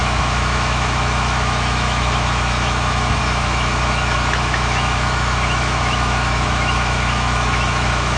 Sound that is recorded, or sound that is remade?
remade